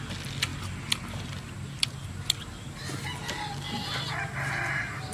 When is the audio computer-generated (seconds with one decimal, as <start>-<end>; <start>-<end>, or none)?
none